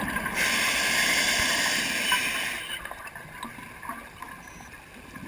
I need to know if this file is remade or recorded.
recorded